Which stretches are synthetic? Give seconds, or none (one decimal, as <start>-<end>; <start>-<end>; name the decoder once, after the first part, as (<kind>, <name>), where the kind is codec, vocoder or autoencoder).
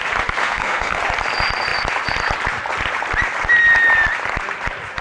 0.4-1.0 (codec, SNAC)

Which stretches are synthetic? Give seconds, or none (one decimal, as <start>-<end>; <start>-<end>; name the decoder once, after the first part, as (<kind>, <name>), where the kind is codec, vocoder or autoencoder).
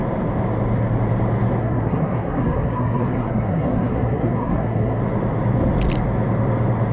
1.6-5.0 (codec, SNAC)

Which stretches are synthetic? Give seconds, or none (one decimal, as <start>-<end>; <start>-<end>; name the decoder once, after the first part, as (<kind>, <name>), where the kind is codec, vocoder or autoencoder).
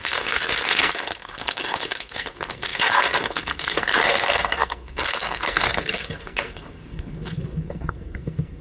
0.0-8.6 (codec, SNAC)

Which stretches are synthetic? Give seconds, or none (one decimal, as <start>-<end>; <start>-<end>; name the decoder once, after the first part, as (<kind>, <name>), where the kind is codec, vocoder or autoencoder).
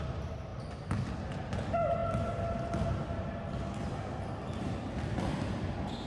none